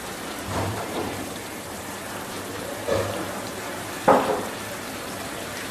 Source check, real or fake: fake